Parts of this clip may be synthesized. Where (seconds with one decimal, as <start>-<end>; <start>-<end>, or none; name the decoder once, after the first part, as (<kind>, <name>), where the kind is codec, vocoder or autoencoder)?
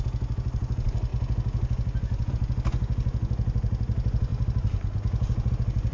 none